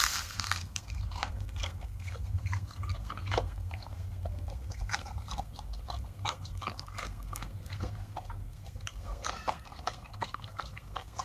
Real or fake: fake